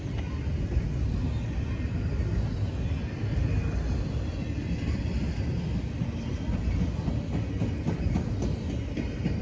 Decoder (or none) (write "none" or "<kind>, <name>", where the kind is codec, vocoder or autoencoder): none